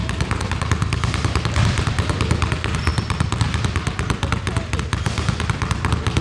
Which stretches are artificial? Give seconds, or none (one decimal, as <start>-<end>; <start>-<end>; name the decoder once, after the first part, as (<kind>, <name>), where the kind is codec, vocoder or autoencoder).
none